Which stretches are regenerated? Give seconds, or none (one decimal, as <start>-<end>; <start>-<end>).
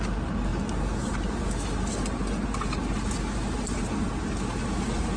none